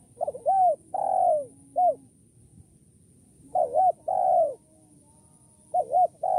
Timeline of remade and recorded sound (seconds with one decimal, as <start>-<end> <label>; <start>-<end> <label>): 0.0-6.4 recorded